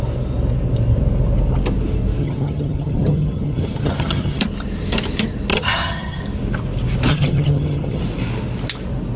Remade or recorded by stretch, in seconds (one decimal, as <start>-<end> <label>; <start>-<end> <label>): 0.0-2.2 recorded; 2.2-4.4 remade; 4.4-5.5 recorded; 5.5-6.2 remade; 6.2-7.1 recorded; 7.1-8.0 remade; 8.0-9.2 recorded